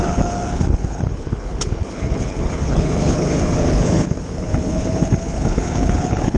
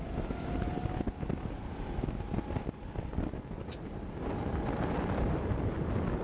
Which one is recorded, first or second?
second